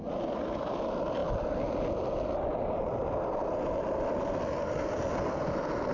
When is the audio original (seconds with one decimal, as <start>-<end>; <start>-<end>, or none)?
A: 0.0-5.9